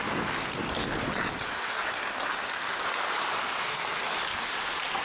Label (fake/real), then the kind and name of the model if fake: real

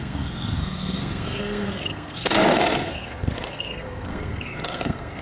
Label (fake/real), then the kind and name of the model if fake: fake, codec, SNAC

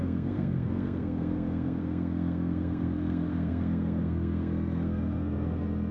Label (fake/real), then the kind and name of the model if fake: fake, codec, SNAC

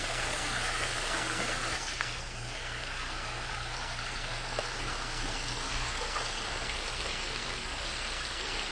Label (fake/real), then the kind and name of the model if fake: fake, codec, SNAC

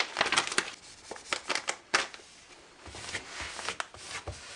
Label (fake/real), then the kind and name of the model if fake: real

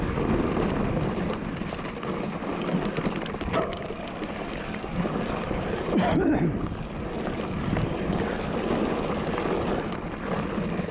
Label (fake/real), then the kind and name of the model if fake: real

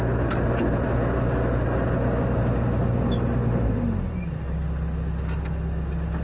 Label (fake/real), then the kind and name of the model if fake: real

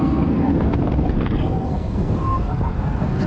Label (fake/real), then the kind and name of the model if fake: fake, codec, SNAC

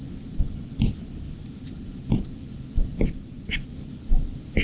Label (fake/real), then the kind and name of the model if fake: real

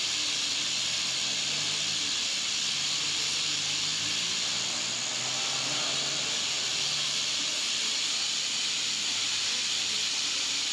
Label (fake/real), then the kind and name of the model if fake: real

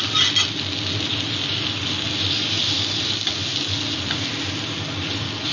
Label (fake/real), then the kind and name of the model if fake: real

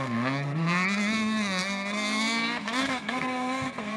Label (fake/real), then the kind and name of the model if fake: fake, codec, SNAC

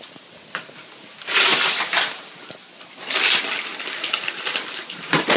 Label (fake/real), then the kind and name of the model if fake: real